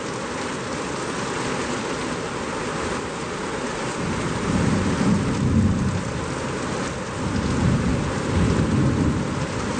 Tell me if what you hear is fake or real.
real